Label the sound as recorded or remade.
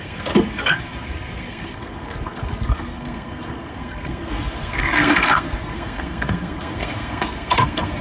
remade